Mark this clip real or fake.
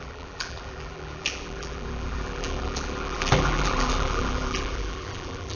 fake